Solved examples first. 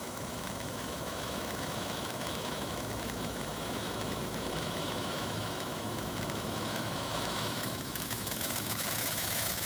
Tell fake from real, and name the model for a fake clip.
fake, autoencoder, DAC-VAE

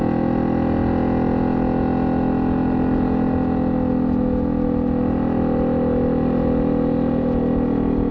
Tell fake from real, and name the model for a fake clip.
real